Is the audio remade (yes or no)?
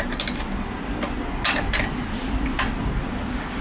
no